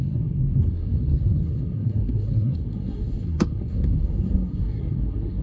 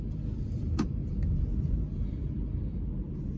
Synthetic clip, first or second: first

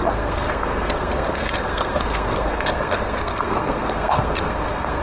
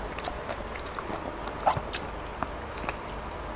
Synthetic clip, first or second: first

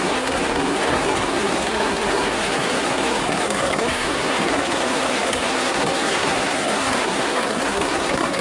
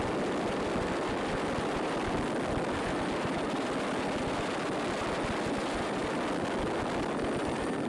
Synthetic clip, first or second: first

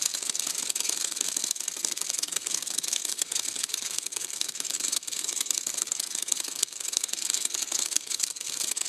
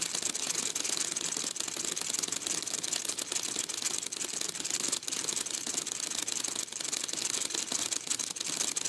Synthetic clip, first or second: first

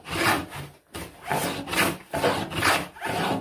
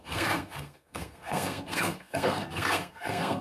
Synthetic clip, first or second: second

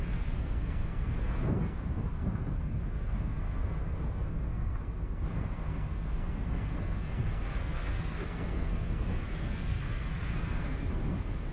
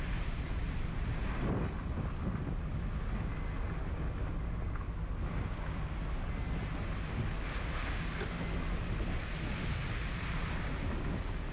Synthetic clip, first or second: first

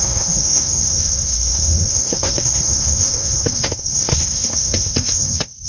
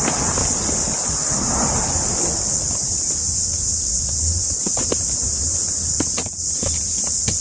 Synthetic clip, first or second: first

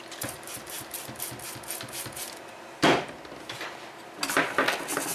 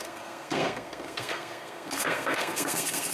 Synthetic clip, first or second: second